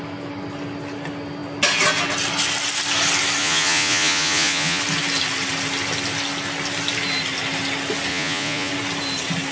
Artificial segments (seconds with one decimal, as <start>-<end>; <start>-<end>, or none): 3.4-4.8; 8.1-8.7

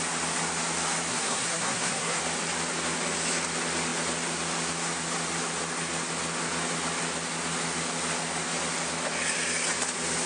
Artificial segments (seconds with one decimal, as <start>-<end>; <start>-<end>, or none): 1.1-2.2

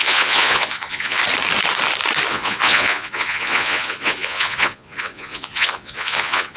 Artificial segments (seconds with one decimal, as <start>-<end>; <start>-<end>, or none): 0.0-1.2; 2.3-6.6

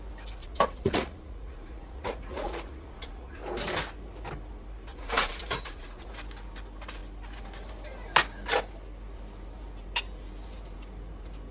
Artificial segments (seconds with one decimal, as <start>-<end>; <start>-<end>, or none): 0.4-3.4; 4.9-6.1